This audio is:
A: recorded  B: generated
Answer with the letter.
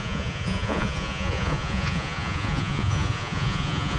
B